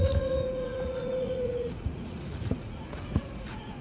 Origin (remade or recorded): remade